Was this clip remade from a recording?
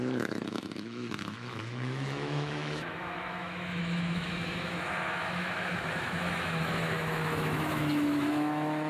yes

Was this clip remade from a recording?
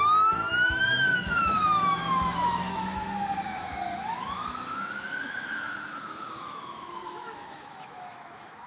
yes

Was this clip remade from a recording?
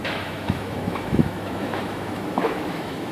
yes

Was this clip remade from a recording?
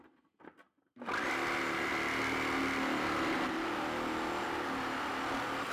no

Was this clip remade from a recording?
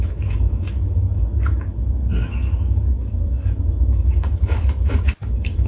yes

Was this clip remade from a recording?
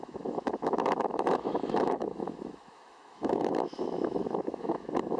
yes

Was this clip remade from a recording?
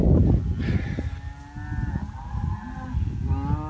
no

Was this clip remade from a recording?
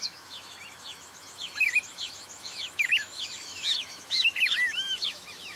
yes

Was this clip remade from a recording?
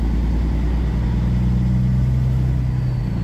no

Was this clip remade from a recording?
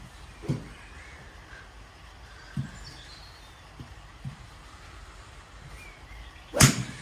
no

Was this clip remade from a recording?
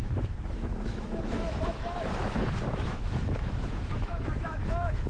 yes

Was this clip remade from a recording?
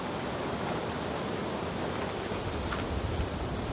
no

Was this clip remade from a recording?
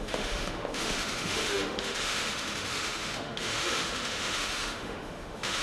yes